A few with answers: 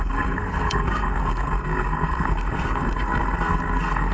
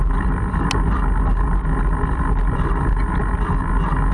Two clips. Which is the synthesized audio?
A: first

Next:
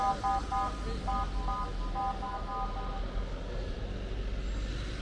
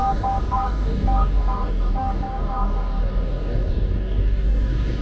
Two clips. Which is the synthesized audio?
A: second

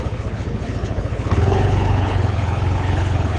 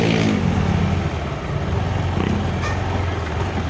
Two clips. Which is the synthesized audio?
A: first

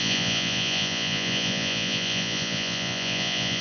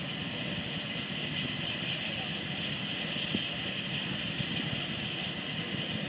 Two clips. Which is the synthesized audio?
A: first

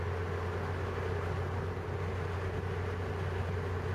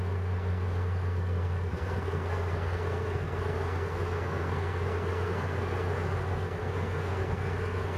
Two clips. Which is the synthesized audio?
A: second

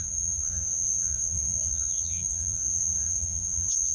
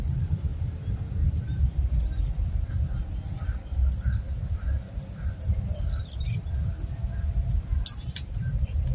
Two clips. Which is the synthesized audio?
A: first